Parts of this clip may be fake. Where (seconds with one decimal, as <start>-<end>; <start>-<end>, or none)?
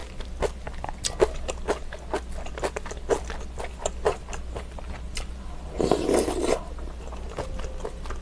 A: none